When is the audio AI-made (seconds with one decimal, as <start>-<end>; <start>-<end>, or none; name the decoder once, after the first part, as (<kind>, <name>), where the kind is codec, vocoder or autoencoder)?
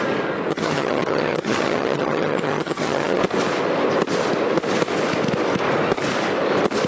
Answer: 0.5-3.2 (vocoder, HiFi-GAN)